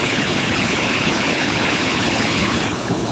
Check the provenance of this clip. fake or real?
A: fake